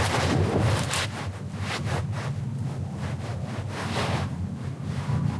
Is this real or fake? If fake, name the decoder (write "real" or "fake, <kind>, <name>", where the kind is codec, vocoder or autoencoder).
real